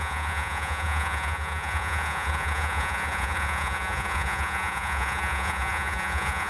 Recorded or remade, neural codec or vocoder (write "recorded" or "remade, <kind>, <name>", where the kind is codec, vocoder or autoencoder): remade, vocoder, Vocos